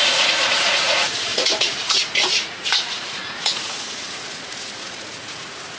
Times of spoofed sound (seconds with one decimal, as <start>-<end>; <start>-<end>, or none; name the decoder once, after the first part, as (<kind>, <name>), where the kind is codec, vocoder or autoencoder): 0.0-5.8 (vocoder, Vocos)